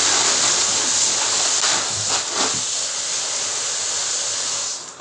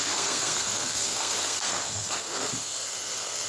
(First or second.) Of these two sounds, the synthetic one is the second